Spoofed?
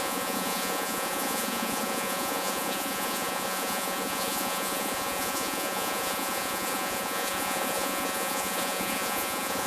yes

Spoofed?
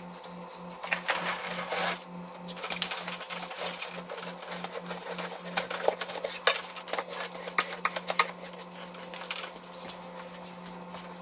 no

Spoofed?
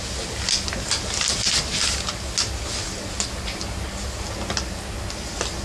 no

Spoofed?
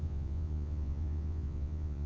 yes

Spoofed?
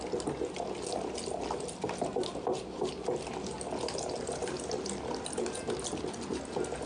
no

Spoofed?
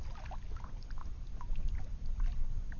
no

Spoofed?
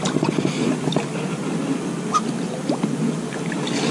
no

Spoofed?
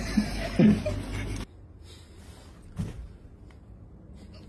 no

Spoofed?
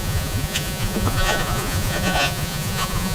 yes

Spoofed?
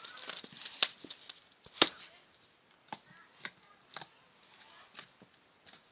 no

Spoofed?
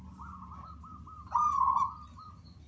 no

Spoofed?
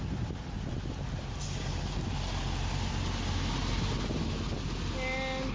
no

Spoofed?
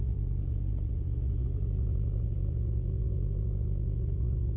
yes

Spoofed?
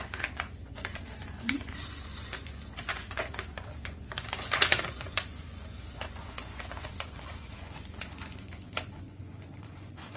yes